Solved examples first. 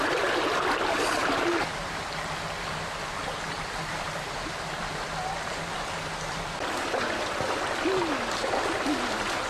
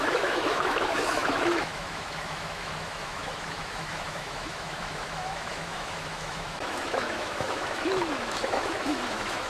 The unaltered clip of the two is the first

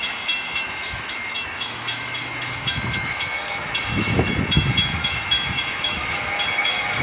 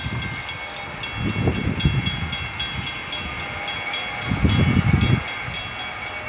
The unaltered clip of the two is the second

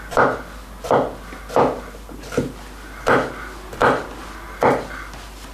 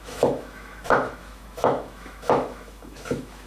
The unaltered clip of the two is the first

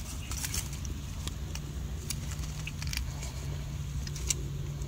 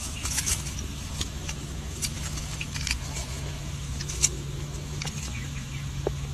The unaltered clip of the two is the first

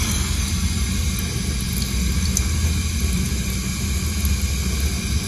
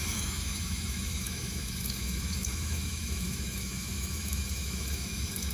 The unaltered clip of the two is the first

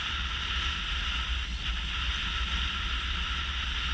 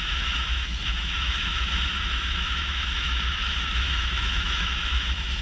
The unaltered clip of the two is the first